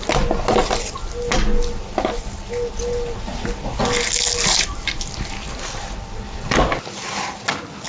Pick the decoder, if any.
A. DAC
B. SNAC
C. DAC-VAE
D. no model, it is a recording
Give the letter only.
D